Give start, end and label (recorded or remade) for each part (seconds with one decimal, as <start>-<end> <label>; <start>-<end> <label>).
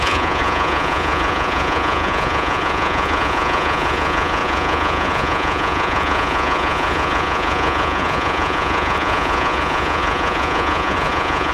0.0-11.5 remade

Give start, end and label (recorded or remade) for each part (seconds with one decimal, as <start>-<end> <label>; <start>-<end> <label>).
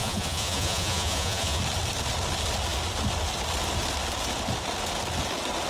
0.0-1.6 remade; 1.6-5.7 recorded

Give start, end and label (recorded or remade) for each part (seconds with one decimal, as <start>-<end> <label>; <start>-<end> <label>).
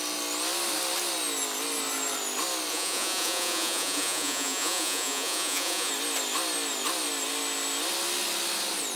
0.0-2.7 recorded; 2.7-5.9 remade; 5.9-9.0 recorded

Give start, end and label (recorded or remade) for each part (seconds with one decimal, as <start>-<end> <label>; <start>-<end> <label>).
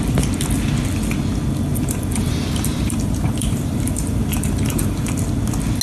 0.0-1.7 recorded; 1.7-5.2 remade; 5.2-5.8 recorded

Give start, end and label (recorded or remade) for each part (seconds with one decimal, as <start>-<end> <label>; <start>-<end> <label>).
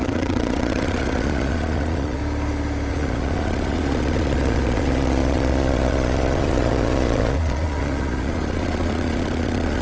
0.0-2.2 remade; 2.2-2.9 recorded; 2.9-9.8 remade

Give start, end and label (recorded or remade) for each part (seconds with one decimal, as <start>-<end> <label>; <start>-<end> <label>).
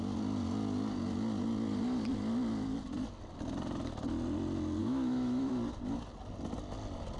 0.0-4.8 recorded; 4.8-5.5 remade; 5.5-7.2 recorded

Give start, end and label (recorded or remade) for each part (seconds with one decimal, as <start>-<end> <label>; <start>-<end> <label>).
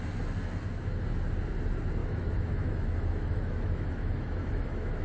0.0-2.0 recorded; 2.0-5.0 remade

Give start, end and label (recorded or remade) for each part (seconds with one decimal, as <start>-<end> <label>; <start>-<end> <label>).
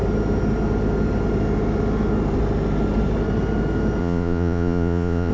0.0-4.0 recorded; 4.0-5.3 remade